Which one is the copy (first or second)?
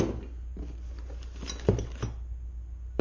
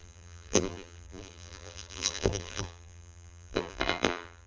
second